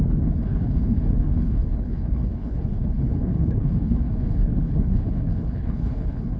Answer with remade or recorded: remade